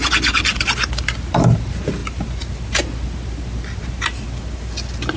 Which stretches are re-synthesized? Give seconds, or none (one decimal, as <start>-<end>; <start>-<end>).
none